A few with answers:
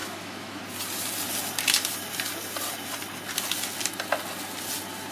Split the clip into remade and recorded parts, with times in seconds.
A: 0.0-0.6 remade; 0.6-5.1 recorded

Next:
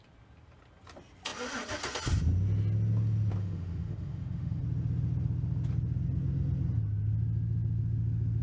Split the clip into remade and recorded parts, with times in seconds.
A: 0.0-3.4 recorded; 3.4-4.6 remade; 4.6-8.4 recorded

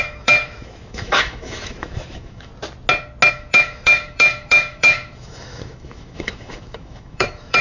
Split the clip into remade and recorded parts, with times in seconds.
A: 0.0-2.5 remade; 2.5-3.3 recorded; 3.3-7.6 remade

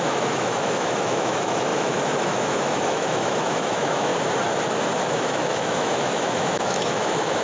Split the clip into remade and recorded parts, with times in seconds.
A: 0.0-4.1 remade; 4.1-5.0 recorded; 5.0-7.4 remade

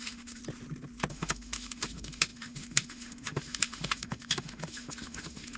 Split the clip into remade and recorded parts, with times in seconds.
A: 0.0-0.4 remade; 0.4-1.1 recorded; 1.1-5.6 remade

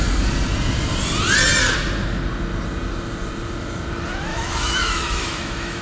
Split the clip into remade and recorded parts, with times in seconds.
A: 0.0-4.3 recorded; 4.3-5.8 remade

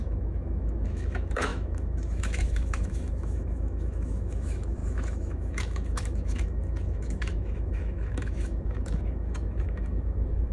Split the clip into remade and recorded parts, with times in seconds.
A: 0.0-10.5 remade

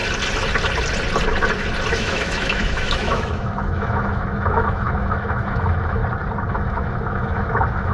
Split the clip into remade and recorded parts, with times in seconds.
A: 0.0-1.9 recorded; 1.9-6.0 remade; 6.0-6.5 recorded; 6.5-7.9 remade